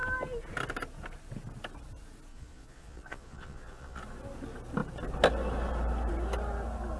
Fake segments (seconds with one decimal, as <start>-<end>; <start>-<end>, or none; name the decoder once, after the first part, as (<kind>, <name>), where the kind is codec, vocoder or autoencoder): 2.3-4.0 (vocoder, Vocos)